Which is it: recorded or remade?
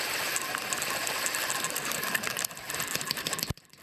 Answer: recorded